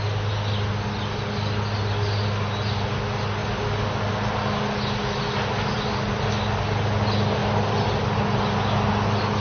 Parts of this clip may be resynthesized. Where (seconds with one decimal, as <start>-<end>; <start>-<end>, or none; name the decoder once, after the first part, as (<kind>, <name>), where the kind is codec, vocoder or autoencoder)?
none